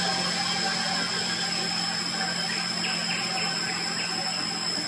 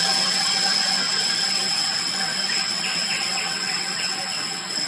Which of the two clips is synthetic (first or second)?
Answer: second